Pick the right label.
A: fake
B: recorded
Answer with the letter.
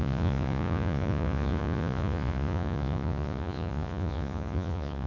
A